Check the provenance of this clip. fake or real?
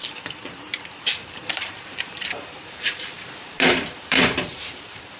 fake